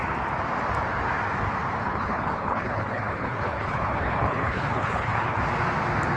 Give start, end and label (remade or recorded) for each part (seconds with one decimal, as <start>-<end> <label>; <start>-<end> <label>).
0.0-1.8 recorded; 1.8-5.4 remade; 5.4-6.2 recorded